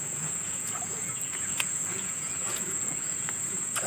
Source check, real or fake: fake